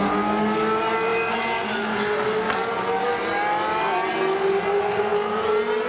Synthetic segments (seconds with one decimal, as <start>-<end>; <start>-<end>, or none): none